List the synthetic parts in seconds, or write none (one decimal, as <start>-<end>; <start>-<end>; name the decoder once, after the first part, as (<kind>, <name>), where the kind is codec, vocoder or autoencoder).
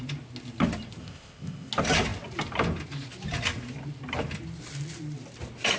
1.0-1.7 (codec, ZipCodec)